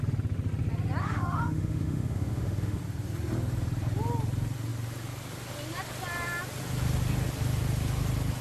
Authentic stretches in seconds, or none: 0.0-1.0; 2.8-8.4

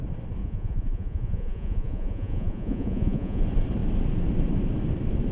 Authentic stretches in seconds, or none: 0.0-0.4; 3.4-5.3

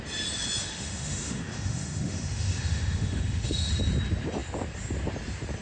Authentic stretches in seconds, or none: 0.0-0.6; 3.7-5.6

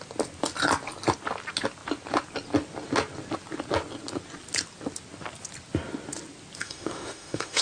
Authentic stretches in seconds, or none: 0.0-6.6